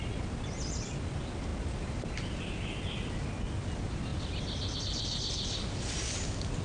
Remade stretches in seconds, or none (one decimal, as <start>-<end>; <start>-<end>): none